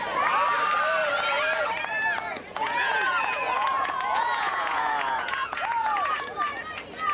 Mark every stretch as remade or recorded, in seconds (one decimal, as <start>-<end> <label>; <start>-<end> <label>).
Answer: 0.0-2.3 recorded; 2.3-6.4 remade; 6.4-7.1 recorded